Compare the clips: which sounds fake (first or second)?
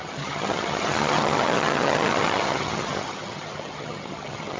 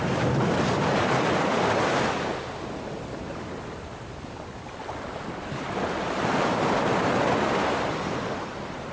first